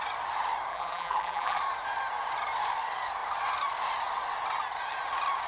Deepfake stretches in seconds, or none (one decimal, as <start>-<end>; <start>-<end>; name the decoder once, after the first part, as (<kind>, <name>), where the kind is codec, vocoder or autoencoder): 0.7-1.6 (vocoder, BigVGAN v2)